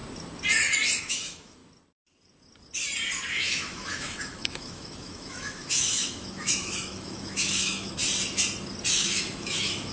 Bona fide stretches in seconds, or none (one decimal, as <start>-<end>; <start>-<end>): 0.0-1.0; 1.6-3.3; 8.0-8.9